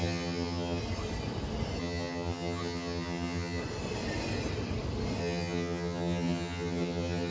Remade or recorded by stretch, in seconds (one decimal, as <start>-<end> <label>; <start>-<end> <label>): 0.0-0.8 remade; 0.8-1.8 recorded; 1.8-3.6 remade; 3.6-5.2 recorded; 5.2-7.3 remade